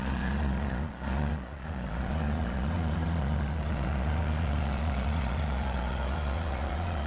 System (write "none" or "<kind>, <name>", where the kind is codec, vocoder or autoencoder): vocoder, Vocos